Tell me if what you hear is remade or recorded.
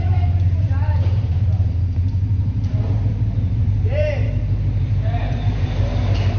remade